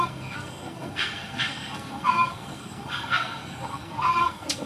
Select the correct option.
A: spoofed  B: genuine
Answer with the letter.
A